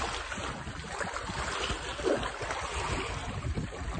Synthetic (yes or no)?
no